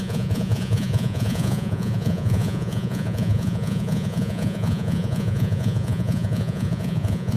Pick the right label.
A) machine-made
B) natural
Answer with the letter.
A